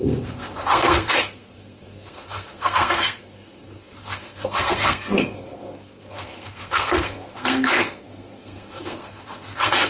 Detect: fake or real fake